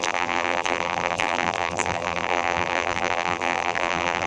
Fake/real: fake